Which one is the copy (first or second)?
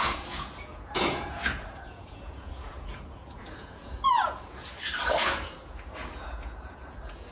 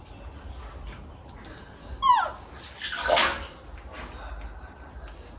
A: first